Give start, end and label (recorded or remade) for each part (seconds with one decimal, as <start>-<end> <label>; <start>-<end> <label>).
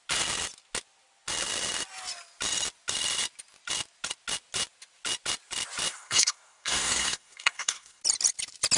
0.0-5.9 recorded; 5.9-8.0 remade; 8.0-8.8 recorded